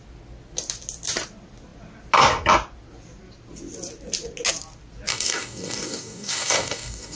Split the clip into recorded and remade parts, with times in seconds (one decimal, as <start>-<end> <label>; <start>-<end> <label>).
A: 0.0-5.1 recorded; 5.1-7.2 remade